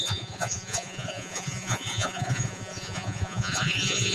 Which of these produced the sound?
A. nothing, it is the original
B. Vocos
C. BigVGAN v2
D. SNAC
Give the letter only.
B